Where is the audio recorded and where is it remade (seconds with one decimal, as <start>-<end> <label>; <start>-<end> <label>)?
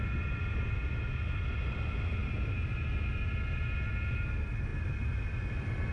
0.0-5.9 recorded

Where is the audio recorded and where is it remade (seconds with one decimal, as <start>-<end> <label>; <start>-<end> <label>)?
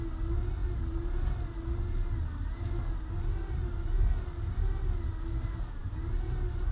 0.0-6.7 recorded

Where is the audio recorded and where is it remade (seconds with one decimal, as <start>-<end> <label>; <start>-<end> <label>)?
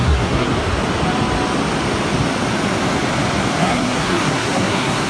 0.0-0.5 remade; 0.5-3.6 recorded; 3.6-5.1 remade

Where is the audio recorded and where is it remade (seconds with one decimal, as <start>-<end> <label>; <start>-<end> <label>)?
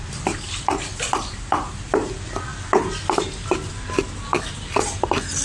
0.0-2.5 remade; 2.5-4.5 recorded; 4.5-5.4 remade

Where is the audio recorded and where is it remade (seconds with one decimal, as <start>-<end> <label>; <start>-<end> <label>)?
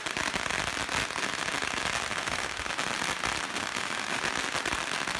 0.0-2.1 recorded; 2.1-2.7 remade; 2.7-3.5 recorded; 3.5-4.2 remade; 4.2-5.2 recorded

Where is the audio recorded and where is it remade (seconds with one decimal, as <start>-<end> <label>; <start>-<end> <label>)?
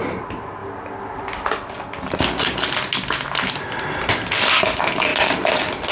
0.0-5.9 recorded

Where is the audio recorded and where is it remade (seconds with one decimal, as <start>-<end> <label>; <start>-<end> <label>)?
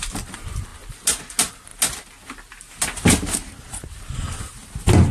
0.0-5.1 recorded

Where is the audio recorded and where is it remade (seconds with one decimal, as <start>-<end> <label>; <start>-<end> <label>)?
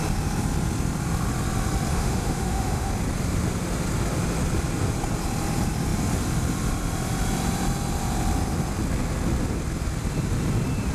0.0-1.9 recorded; 1.9-2.9 remade; 2.9-10.9 recorded